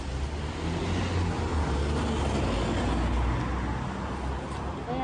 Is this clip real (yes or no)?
yes